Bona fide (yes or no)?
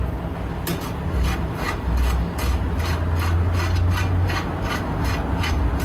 yes